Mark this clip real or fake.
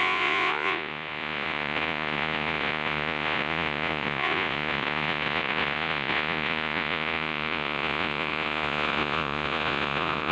fake